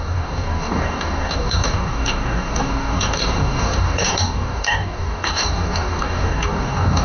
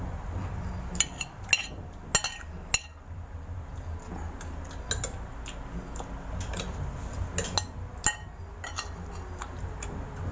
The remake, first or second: first